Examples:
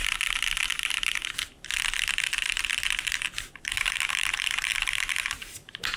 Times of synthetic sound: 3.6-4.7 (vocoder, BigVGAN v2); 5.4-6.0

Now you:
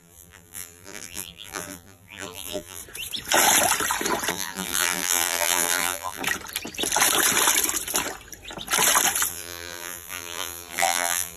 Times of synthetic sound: 0.0-2.8 (vocoder, BigVGAN v2); 4.3-6.2; 9.3-11.4

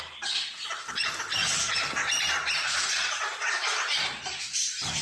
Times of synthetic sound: 1.4-4.4 (vocoder, BigVGAN v2)

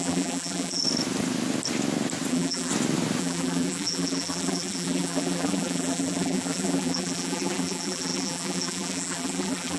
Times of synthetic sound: 0.0-0.8 (vocoder, BigVGAN v2); 2.3-2.7; 3.2-9.8

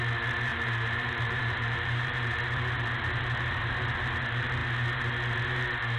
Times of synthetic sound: 0.5-2.4 (vocoder, BigVGAN v2)

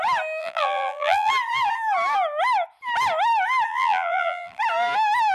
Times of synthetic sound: 0.4-1.3 (vocoder, BigVGAN v2); 3.7-4.6

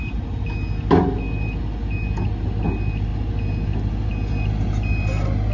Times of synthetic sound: none